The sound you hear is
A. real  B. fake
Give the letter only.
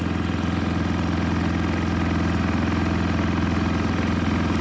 A